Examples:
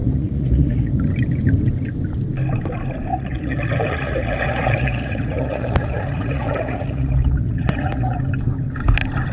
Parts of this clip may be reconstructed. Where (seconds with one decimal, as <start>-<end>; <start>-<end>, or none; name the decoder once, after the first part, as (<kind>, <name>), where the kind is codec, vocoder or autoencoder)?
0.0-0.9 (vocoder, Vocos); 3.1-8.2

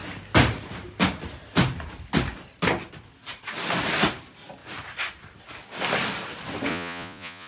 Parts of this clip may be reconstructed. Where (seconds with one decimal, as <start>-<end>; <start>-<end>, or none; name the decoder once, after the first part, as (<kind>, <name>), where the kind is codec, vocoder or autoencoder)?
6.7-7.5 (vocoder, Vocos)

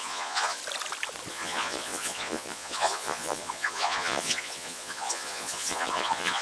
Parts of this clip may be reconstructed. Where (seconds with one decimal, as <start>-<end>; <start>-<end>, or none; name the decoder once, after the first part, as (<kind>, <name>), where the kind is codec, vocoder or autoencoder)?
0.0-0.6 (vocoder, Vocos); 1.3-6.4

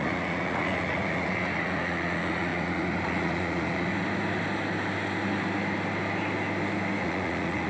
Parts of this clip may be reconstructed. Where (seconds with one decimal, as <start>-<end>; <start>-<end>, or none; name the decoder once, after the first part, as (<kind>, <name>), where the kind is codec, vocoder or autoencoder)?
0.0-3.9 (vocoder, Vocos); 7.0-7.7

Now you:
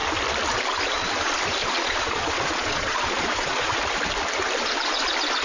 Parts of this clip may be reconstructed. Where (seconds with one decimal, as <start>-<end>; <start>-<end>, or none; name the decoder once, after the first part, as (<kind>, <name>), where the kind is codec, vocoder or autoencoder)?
1.6-3.7 (vocoder, Vocos)